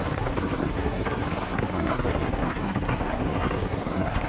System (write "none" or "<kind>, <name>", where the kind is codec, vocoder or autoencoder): codec, SNAC